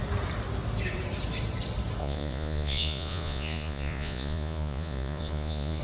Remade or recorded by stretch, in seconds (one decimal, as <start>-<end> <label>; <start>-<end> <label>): 0.0-2.0 recorded; 2.0-5.8 remade